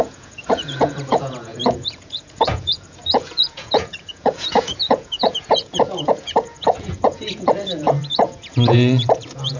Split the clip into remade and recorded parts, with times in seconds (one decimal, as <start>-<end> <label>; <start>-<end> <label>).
0.0-9.6 remade